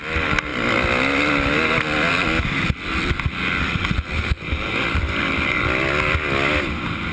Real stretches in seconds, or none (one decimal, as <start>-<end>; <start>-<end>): 0.0-7.1